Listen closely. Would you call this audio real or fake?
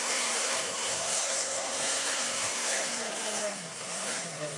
fake